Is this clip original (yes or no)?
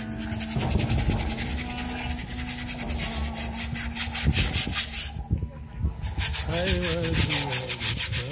yes